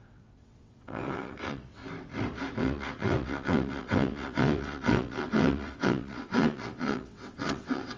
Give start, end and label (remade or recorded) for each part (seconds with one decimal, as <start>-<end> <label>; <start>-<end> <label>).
0.0-1.8 remade; 1.8-2.6 recorded; 2.6-8.0 remade